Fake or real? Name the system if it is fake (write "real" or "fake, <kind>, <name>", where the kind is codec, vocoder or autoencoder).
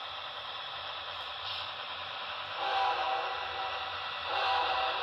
fake, vocoder, BigVGAN v2